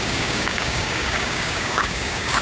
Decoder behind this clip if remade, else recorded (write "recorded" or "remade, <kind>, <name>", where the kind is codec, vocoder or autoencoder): remade, codec, DAC